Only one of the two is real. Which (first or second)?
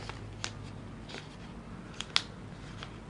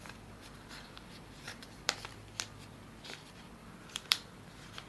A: first